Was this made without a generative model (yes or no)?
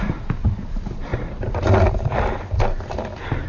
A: yes